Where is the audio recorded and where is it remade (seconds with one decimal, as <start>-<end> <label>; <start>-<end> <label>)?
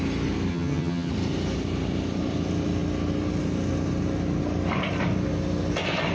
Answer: 0.0-0.5 recorded; 0.5-1.1 remade; 1.1-6.1 recorded